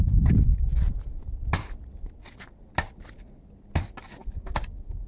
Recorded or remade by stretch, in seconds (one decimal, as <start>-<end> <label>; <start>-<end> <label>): 0.0-5.1 recorded